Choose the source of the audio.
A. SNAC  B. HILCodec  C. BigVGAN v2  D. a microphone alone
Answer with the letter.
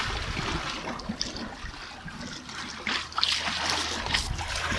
D